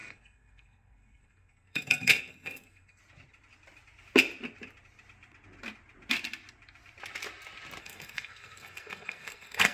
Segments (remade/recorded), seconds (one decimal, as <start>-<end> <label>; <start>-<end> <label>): 0.0-3.0 remade; 3.0-7.8 recorded; 7.8-9.7 remade